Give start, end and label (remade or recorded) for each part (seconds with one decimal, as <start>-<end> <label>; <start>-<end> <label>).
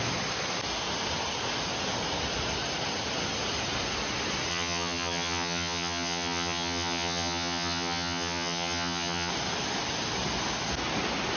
0.0-4.5 recorded; 4.5-9.3 remade; 9.3-11.4 recorded